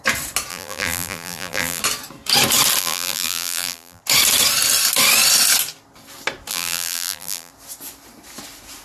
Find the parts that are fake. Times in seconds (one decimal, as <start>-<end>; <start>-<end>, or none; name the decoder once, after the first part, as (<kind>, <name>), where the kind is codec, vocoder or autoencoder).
0.5-1.8 (vocoder, BigVGAN v2); 2.8-4.0; 6.5-7.5